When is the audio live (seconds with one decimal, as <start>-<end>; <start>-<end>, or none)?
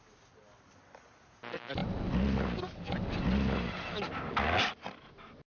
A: 0.0-5.6